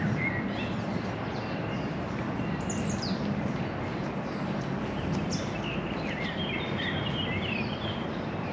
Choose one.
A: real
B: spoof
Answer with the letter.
A